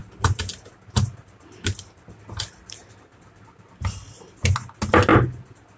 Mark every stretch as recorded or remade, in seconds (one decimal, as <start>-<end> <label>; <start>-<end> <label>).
0.0-5.8 recorded